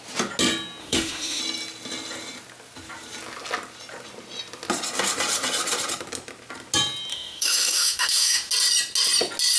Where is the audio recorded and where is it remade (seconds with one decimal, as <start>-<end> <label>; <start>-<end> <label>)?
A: 0.0-0.8 recorded; 0.8-1.4 remade; 1.4-7.1 recorded; 7.1-8.5 remade; 8.5-9.6 recorded